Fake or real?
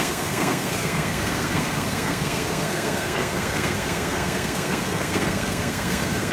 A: fake